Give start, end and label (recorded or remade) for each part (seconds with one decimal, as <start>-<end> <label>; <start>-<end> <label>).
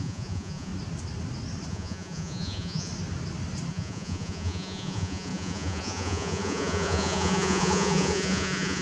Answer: 0.0-0.7 remade; 0.7-1.7 recorded; 1.7-2.9 remade; 2.9-3.7 recorded; 3.7-8.8 remade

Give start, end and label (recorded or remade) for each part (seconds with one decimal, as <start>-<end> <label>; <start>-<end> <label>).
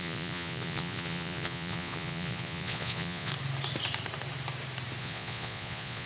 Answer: 0.0-3.3 remade; 3.3-5.0 recorded; 5.0-6.1 remade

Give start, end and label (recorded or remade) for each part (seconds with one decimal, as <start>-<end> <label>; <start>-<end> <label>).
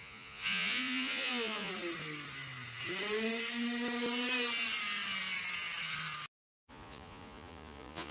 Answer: 0.0-1.7 remade; 1.7-6.4 recorded; 6.4-8.1 remade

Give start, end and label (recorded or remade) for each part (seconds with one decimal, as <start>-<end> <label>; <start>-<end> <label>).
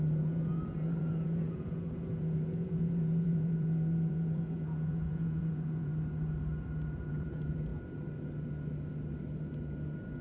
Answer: 0.0-5.9 remade; 5.9-7.1 recorded; 7.1-7.7 remade; 7.7-10.2 recorded